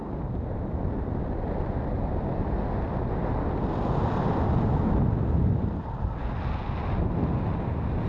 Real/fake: real